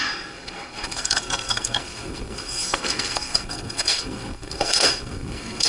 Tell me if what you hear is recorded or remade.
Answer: remade